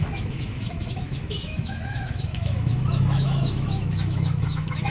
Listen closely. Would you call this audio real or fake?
fake